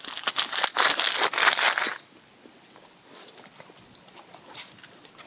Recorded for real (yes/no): yes